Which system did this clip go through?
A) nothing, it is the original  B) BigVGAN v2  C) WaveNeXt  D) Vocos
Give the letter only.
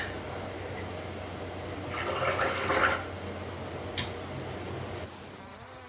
A